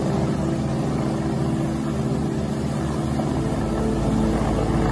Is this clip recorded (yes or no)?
yes